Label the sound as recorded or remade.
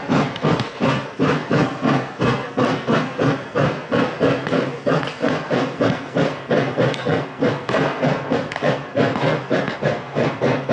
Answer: remade